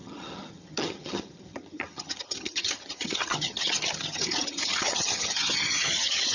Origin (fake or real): fake